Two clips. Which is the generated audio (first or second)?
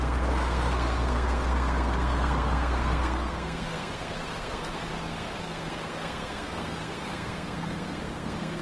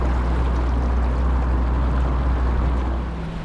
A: first